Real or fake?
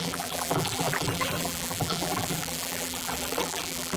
fake